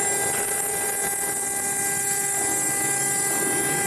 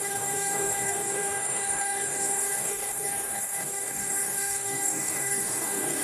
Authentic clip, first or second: first